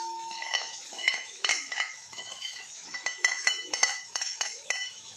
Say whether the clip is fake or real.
fake